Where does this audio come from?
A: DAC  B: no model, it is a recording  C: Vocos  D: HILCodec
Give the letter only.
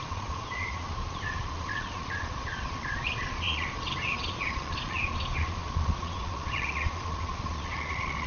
C